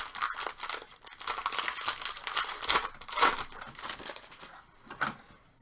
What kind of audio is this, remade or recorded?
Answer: recorded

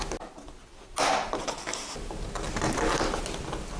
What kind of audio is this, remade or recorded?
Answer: recorded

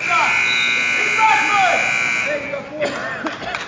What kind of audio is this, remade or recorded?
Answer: recorded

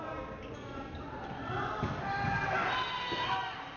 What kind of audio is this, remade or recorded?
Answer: recorded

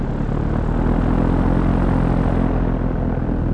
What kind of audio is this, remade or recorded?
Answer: recorded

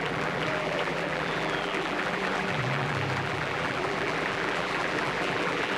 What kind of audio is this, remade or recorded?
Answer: remade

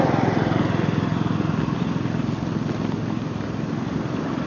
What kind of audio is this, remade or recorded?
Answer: recorded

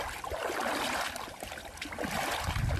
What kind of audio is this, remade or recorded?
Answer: remade